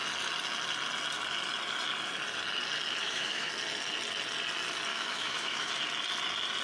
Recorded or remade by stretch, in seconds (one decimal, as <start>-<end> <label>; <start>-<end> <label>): 0.0-3.0 recorded; 3.0-3.5 remade; 3.5-4.9 recorded; 4.9-5.7 remade; 5.7-6.6 recorded